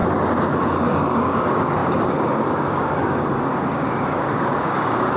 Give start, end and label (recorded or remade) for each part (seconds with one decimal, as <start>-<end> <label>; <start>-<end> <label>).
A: 0.0-0.5 recorded; 0.5-5.2 remade

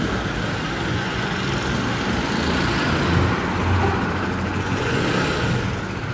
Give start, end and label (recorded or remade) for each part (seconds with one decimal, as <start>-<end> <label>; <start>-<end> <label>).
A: 0.0-0.9 recorded; 0.9-1.4 remade; 1.4-4.5 recorded; 4.5-5.0 remade; 5.0-6.1 recorded

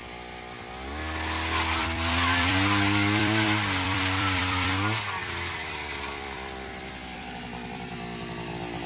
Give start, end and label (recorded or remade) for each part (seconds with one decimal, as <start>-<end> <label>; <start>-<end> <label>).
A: 0.0-1.8 recorded; 1.8-4.7 remade; 4.7-5.2 recorded; 5.2-7.9 remade; 7.9-8.9 recorded

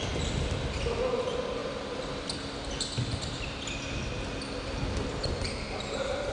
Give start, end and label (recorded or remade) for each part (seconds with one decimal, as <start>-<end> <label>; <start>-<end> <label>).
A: 0.0-6.3 recorded

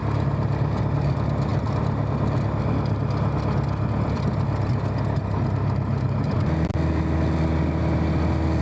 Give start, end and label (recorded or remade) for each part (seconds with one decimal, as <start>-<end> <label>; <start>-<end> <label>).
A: 0.0-8.6 recorded

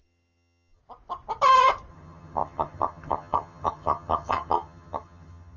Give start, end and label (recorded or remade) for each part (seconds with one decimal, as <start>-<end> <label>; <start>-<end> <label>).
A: 0.0-0.8 remade; 0.8-1.9 recorded; 1.9-5.6 remade

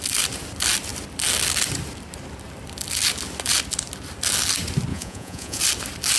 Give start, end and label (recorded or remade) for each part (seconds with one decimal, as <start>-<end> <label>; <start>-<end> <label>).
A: 0.0-4.9 recorded; 4.9-5.6 remade; 5.6-6.2 recorded

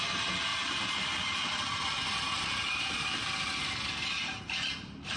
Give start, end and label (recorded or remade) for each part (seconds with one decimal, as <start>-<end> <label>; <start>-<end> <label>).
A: 0.0-3.2 remade; 3.2-4.8 recorded; 4.8-5.2 remade